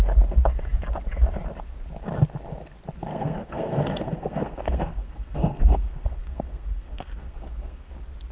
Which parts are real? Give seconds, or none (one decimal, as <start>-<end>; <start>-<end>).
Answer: 0.0-3.1; 7.9-8.3